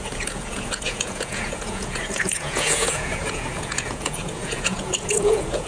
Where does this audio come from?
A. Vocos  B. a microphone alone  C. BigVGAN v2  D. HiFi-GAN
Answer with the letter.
A